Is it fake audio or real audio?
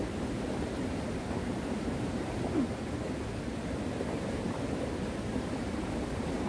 real